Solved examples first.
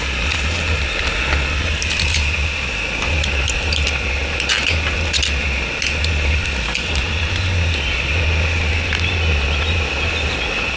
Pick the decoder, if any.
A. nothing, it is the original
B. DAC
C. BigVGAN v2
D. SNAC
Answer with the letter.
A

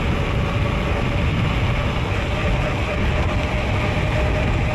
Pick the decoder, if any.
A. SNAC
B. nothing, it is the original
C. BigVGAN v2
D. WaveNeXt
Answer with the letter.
B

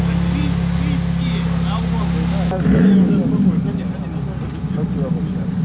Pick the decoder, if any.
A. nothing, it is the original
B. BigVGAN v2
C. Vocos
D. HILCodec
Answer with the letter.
A